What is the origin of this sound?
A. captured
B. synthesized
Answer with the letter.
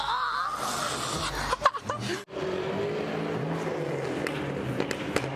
A